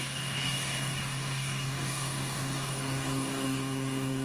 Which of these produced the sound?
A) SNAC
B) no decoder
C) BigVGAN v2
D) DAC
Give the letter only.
D